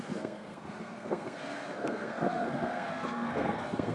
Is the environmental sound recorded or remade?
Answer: remade